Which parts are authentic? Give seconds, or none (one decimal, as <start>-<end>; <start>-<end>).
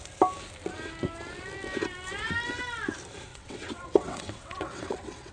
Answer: 0.0-3.3